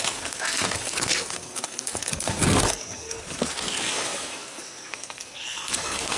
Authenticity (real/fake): fake